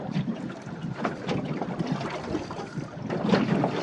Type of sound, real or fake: real